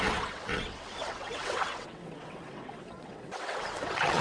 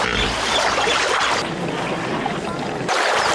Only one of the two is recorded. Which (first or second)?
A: second